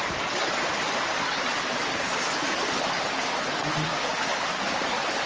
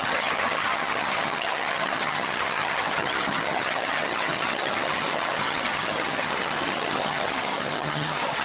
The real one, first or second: first